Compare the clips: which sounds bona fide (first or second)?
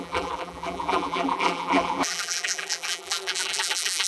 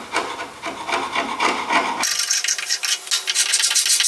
second